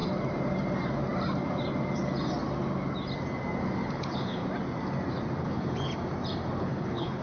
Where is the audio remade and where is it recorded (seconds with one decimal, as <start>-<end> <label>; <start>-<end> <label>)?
0.0-3.9 recorded; 3.9-4.4 remade; 4.4-5.4 recorded; 5.4-5.9 remade; 5.9-6.6 recorded; 6.6-7.2 remade